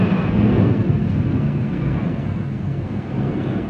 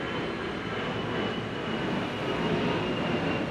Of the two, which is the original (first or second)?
second